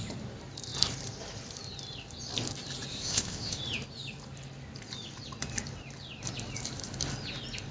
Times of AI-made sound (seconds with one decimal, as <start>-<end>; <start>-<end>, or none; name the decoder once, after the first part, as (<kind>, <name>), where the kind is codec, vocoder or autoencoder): 2.9-3.6 (codec, ZipCodec)